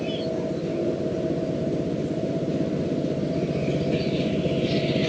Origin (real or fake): real